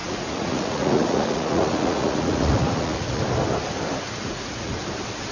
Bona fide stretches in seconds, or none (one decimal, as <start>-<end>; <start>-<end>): 3.2-4.2; 4.7-5.3